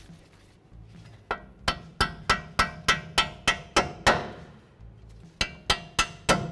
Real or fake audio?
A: real